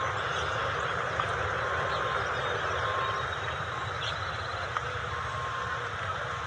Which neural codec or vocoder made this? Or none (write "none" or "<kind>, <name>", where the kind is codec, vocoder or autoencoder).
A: vocoder, BigVGAN v2